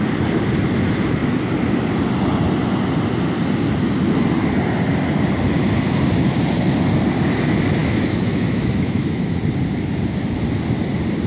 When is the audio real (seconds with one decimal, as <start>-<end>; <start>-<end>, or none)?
0.0-7.8; 9.4-11.3